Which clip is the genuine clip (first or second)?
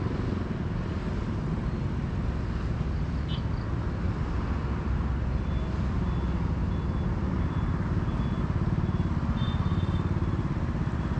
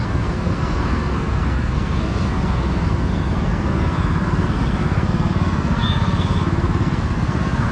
first